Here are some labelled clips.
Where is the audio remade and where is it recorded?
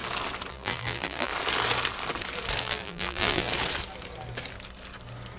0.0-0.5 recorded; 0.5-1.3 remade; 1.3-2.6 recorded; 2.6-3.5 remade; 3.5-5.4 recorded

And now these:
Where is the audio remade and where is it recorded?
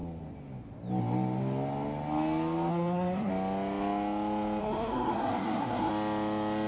0.0-2.7 recorded; 2.7-3.3 remade; 3.3-4.6 recorded; 4.6-5.9 remade; 5.9-6.7 recorded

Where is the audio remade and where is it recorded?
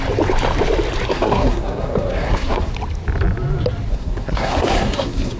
0.0-1.1 recorded; 1.1-2.7 remade; 2.7-3.9 recorded; 3.9-5.4 remade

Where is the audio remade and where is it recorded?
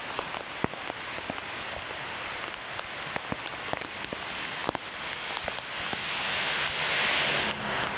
0.0-8.0 recorded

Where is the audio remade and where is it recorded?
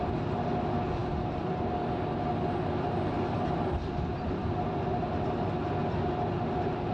0.0-1.0 recorded; 1.0-5.1 remade; 5.1-6.9 recorded